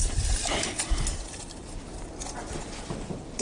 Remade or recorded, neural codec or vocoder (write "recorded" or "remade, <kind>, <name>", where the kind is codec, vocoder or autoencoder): recorded